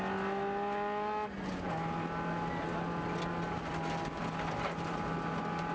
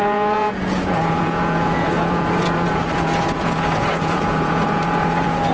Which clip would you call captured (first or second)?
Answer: first